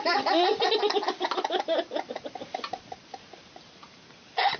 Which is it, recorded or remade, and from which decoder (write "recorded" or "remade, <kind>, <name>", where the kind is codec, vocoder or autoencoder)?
recorded